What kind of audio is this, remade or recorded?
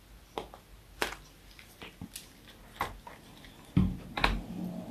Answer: recorded